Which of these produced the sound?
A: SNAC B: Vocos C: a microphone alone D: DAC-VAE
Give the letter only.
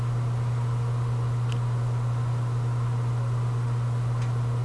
C